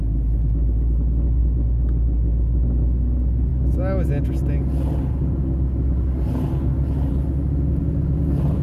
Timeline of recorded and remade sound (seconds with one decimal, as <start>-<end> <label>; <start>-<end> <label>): 0.0-8.6 recorded